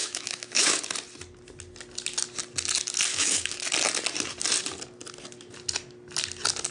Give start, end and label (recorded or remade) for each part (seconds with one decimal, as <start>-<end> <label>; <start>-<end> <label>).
0.0-0.8 remade; 0.8-3.1 recorded; 3.1-3.6 remade; 3.6-6.7 recorded